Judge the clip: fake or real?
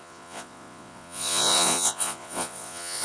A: fake